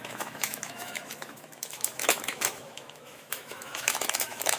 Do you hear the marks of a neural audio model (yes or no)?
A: yes